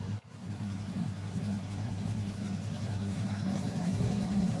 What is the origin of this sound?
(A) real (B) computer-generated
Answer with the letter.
B